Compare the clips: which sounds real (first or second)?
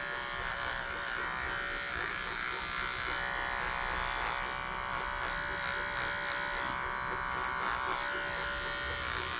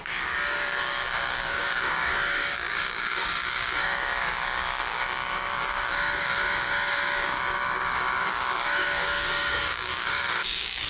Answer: first